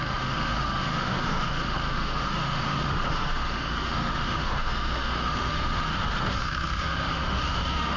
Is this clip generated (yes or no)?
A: yes